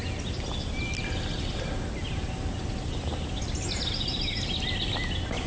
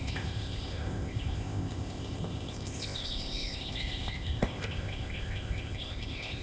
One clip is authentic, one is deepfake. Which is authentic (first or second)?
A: first